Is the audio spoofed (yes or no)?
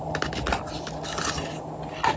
no